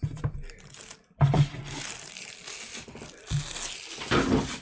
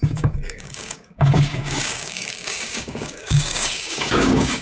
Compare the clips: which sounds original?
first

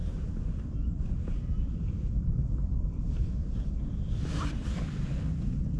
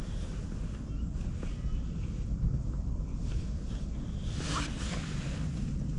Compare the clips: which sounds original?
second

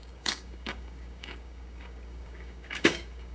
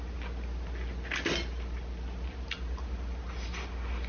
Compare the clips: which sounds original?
second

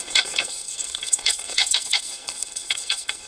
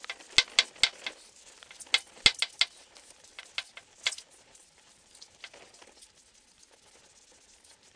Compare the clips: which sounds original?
second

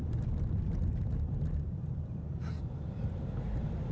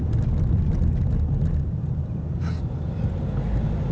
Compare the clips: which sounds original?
second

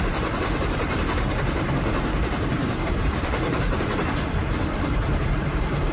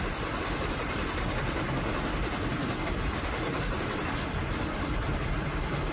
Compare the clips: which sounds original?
second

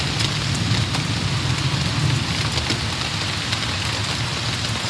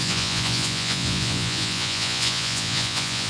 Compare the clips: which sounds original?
first